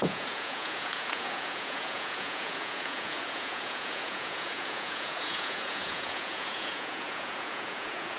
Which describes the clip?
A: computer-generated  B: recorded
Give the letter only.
A